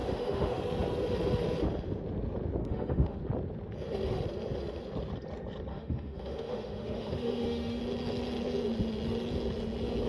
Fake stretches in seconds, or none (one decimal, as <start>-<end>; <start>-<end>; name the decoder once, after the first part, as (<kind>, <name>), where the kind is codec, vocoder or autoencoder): 0.0-0.6 (autoencoder, DAC-VAE); 2.6-3.2; 5.7-7.8